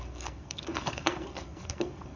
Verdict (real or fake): fake